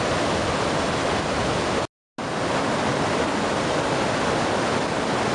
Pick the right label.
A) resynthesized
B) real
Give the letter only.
B